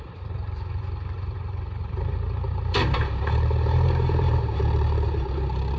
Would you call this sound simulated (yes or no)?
yes